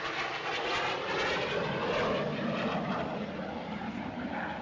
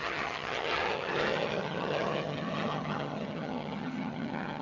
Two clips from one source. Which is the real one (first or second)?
first